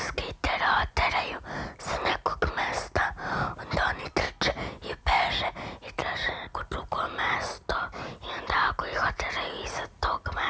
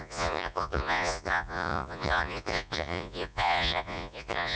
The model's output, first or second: second